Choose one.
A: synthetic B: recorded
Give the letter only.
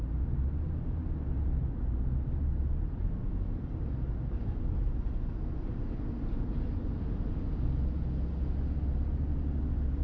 B